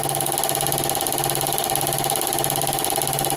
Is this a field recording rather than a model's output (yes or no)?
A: yes